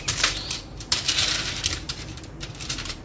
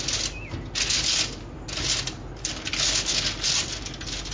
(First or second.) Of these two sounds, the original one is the second